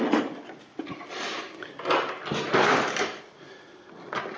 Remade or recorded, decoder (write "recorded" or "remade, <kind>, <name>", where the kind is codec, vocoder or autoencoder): recorded